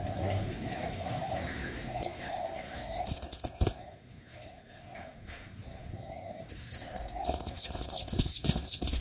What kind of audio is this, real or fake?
fake